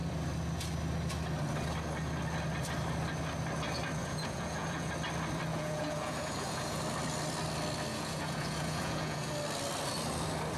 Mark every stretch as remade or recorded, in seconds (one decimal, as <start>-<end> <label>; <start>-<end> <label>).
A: 0.0-4.0 recorded; 4.0-4.9 remade; 4.9-5.5 recorded; 5.5-6.8 remade; 6.8-7.9 recorded; 7.9-9.3 remade; 9.3-10.6 recorded